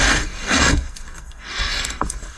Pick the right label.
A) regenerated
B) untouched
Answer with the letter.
A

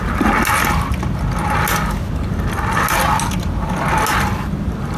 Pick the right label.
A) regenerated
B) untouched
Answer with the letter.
B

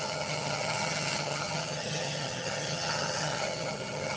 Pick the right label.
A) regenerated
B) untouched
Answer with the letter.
A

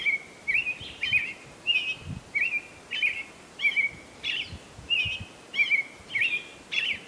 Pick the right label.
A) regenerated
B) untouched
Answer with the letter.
B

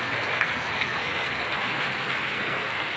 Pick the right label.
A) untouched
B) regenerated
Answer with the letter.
B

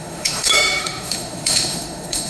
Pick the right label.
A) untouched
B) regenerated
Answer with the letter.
B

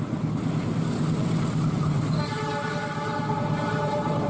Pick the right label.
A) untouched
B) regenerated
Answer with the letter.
B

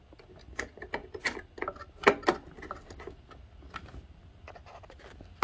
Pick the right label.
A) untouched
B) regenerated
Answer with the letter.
A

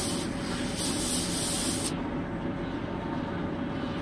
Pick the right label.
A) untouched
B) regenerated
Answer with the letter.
A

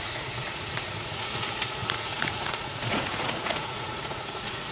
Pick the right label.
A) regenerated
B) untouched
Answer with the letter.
A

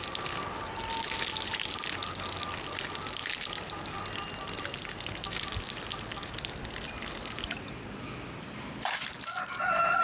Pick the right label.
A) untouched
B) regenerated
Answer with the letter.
A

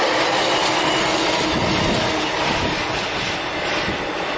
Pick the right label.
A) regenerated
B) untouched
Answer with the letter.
B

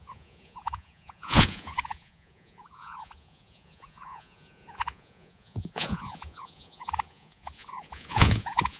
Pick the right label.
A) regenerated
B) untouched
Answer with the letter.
A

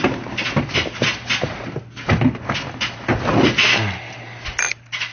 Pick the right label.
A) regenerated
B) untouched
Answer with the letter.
B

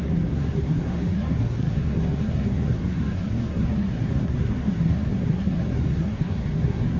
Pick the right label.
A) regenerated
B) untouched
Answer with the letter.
A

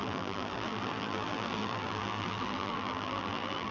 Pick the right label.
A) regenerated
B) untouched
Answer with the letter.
A